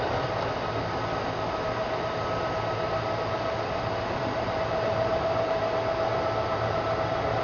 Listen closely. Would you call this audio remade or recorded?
recorded